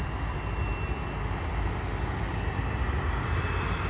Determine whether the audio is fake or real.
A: real